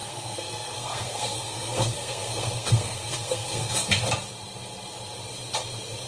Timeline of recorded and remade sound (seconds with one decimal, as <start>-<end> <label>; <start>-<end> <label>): 0.0-3.7 remade; 3.7-6.1 recorded